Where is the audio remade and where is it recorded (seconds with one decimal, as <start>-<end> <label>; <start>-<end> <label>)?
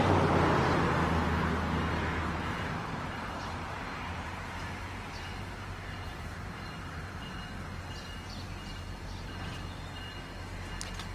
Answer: 0.0-2.8 recorded; 2.8-7.3 remade; 7.3-8.7 recorded; 8.7-9.3 remade; 9.3-11.1 recorded